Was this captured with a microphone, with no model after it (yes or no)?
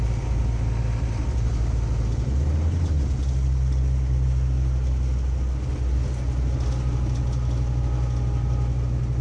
yes